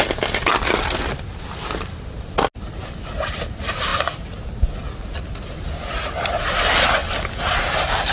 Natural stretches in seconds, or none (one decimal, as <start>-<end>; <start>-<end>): 0.0-8.1